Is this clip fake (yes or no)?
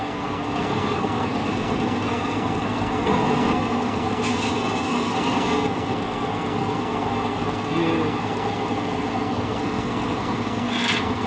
yes